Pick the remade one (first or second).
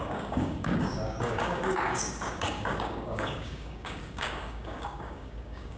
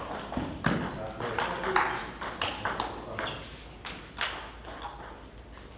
first